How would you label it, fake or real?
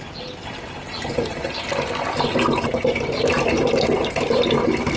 real